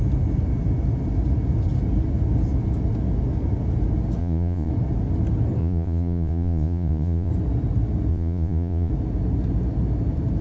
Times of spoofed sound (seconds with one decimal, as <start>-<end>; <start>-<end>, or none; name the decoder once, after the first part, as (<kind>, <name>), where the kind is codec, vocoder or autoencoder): 4.2-4.7 (vocoder, Vocos); 5.6-7.3; 8.1-8.9